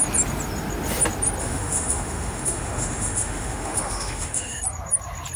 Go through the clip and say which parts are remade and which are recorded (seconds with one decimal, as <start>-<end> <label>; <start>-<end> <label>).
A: 0.0-1.4 recorded; 1.4-4.6 remade; 4.6-5.4 recorded